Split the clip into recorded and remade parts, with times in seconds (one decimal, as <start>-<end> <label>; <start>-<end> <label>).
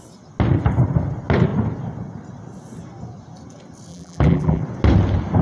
0.0-3.9 recorded; 3.9-4.6 remade; 4.6-5.4 recorded